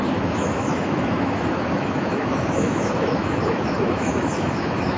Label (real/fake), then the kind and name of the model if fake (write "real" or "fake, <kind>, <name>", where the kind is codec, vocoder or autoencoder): fake, autoencoder, DAC-VAE